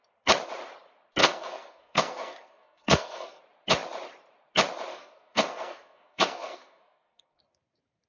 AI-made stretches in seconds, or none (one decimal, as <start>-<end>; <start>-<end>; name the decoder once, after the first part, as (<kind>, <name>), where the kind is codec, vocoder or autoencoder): 1.2-3.4 (codec, SNAC); 4.9-7.4